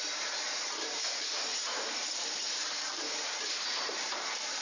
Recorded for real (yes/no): no